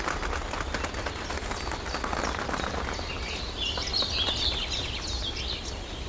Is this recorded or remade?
recorded